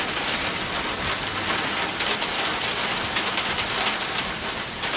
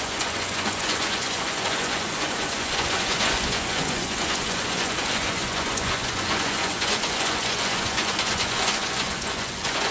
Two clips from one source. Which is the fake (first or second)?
second